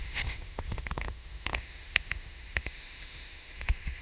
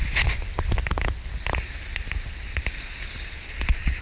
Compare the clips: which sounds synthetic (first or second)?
first